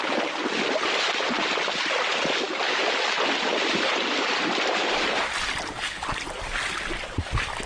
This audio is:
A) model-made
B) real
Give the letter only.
B